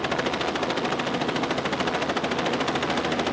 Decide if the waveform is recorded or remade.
recorded